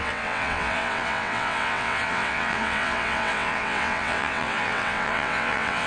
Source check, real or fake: fake